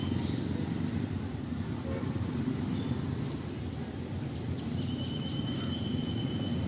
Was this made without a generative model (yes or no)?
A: yes